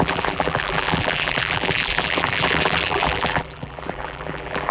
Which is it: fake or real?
fake